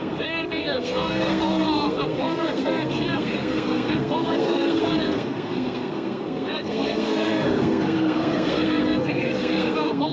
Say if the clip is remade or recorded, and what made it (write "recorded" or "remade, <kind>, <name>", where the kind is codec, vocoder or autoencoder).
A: remade, codec, SNAC